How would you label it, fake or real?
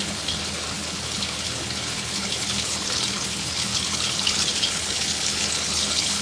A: fake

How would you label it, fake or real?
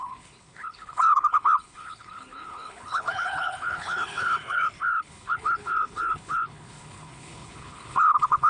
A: fake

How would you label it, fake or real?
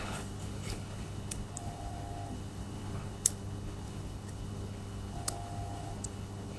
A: fake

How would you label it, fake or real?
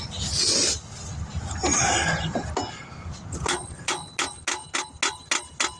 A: real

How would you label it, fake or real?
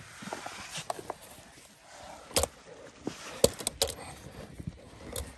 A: real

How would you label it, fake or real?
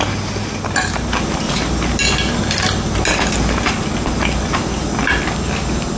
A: real